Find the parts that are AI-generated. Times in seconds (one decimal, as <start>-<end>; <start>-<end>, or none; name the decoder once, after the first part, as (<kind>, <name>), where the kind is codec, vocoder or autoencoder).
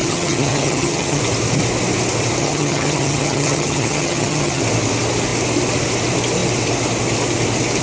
0.0-1.2 (vocoder, HiFi-GAN); 2.4-4.6